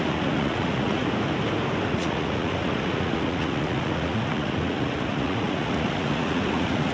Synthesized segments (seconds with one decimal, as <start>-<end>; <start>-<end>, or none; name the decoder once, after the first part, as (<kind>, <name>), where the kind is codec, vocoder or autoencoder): 0.0-1.0 (vocoder, Vocos); 1.9-6.9

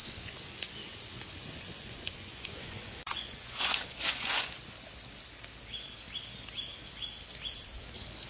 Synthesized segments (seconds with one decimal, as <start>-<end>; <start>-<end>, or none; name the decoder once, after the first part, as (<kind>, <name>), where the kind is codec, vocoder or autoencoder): 0.0-4.5 (vocoder, Vocos)